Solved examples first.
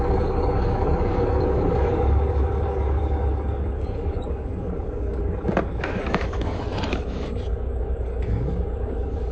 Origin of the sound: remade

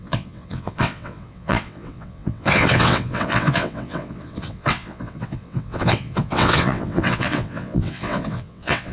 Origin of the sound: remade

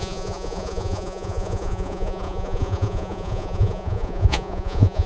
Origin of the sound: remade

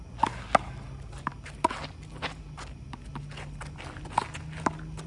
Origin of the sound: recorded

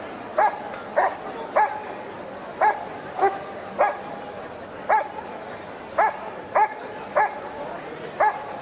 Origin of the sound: recorded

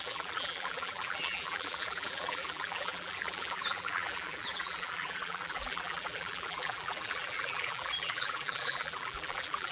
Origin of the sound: remade